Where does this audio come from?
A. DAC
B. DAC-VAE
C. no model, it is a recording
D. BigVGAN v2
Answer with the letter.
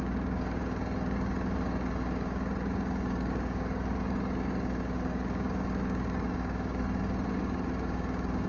A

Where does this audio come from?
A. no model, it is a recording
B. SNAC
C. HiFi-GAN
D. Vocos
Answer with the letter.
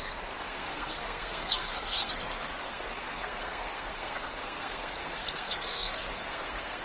B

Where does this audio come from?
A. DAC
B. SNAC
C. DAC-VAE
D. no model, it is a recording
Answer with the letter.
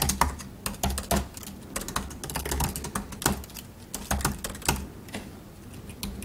D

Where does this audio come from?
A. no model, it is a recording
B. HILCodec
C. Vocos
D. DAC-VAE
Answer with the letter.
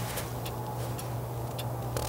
A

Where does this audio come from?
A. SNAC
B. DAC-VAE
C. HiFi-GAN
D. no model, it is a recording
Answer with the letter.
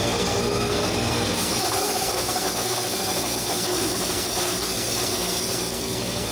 A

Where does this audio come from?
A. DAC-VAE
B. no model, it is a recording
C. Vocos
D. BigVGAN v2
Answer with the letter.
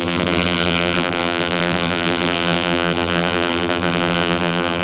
D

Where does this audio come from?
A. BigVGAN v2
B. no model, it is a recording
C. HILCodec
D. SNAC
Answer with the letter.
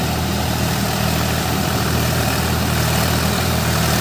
A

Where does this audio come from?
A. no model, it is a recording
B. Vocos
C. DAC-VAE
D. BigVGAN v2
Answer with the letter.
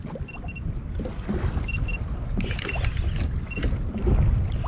A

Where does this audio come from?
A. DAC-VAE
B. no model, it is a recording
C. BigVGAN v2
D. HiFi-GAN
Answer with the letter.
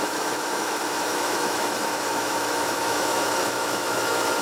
A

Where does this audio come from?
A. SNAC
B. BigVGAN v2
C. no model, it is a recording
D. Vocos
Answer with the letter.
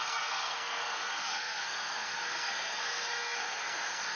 A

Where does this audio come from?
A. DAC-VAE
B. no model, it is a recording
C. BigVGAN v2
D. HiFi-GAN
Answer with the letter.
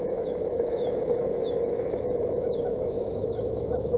A